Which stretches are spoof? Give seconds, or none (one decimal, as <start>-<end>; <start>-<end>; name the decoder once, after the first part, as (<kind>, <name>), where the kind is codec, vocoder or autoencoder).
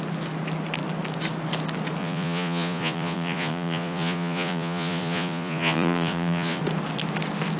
2.0-6.6 (vocoder, Vocos)